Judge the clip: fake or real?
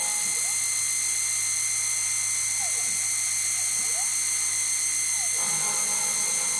real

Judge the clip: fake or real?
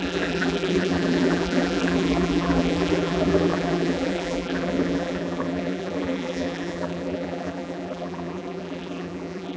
fake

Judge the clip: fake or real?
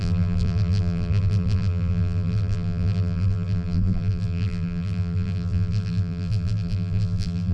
fake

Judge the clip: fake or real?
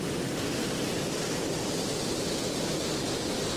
real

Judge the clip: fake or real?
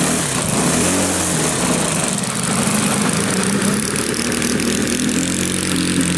real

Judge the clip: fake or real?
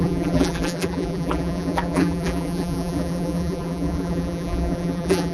fake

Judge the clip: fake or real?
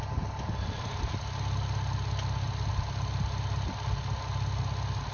real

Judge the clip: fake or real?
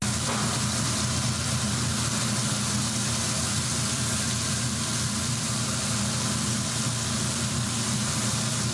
real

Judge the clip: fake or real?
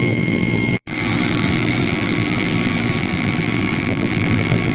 fake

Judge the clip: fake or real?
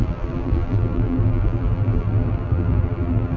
fake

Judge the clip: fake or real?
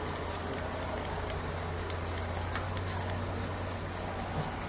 real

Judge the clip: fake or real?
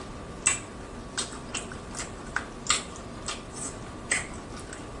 real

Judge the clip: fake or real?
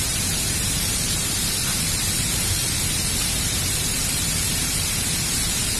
fake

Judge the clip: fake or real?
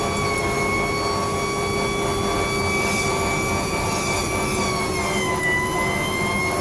real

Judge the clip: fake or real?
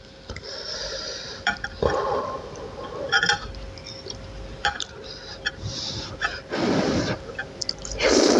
fake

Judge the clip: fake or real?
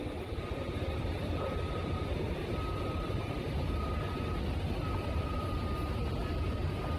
real